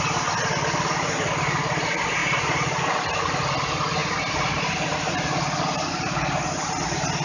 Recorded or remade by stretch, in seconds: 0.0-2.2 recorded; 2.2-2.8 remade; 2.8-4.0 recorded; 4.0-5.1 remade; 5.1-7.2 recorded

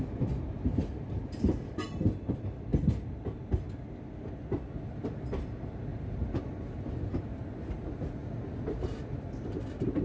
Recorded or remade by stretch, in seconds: 0.0-5.9 recorded; 5.9-6.5 remade; 6.5-8.2 recorded; 8.2-8.9 remade; 8.9-10.0 recorded

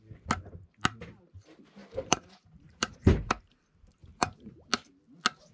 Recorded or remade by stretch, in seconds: 0.0-1.8 recorded; 1.8-3.5 remade; 3.5-4.0 recorded; 4.0-4.5 remade; 4.5-5.5 recorded

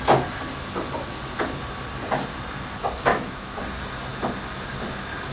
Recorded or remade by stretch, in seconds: 0.0-3.1 recorded; 3.1-3.6 remade; 3.6-5.3 recorded

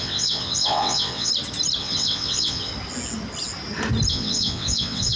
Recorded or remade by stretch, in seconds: 0.0-1.3 remade; 1.3-1.8 recorded; 1.8-2.7 remade; 2.7-4.1 recorded; 4.1-5.2 remade

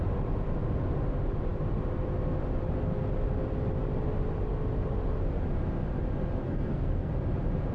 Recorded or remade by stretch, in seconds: 0.0-6.4 recorded; 6.4-7.1 remade; 7.1-7.7 recorded

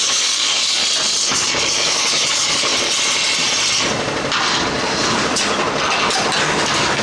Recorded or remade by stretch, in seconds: 0.0-0.8 remade; 0.8-1.3 recorded; 1.3-2.7 remade; 2.7-6.4 recorded; 6.4-7.0 remade

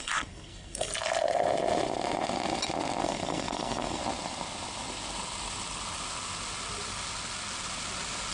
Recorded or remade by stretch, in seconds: 0.0-0.9 remade; 0.9-3.0 recorded; 3.0-4.0 remade; 4.0-8.3 recorded